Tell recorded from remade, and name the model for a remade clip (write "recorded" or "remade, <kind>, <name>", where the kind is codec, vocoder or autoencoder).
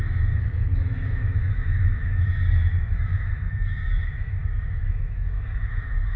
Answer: remade, autoencoder, DAC-VAE